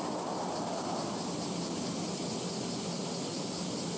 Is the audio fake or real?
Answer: real